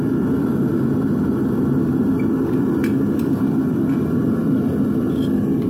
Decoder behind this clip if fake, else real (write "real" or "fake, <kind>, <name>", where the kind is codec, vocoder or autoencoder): real